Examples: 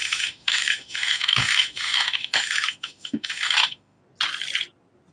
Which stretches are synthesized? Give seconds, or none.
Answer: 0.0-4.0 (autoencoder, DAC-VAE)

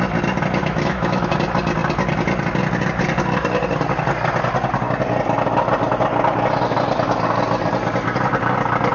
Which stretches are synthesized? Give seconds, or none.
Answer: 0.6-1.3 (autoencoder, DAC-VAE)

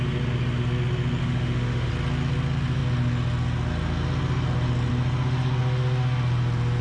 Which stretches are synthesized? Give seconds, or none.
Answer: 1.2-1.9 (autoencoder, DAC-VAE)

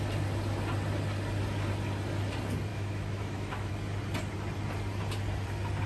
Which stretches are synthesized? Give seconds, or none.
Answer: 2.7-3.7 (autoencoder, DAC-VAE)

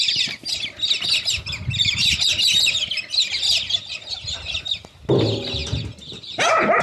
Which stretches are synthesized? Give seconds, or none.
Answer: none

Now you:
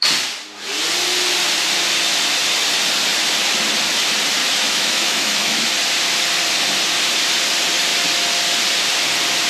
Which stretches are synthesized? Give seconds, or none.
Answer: 4.4-5.7 (autoencoder, DAC-VAE)

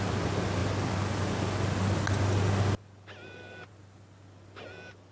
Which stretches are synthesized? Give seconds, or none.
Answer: none

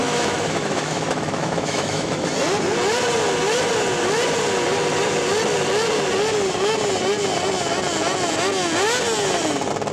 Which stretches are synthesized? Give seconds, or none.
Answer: 0.0-2.3 (autoencoder, DAC-VAE)